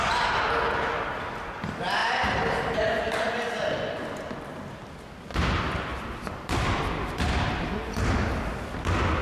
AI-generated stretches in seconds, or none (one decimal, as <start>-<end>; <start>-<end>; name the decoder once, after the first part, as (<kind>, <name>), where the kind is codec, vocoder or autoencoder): 2.0-3.3 (vocoder, BigVGAN v2); 5.9-7.7